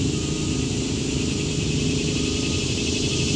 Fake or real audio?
fake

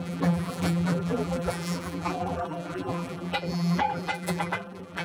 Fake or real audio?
fake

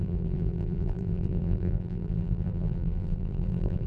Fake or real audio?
fake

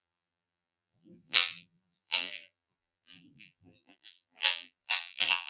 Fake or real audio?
fake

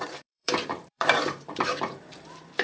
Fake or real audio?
fake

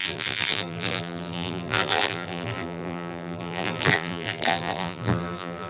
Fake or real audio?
fake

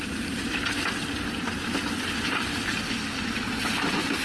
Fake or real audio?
fake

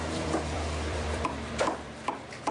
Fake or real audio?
fake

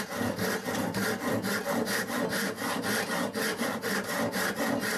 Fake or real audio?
fake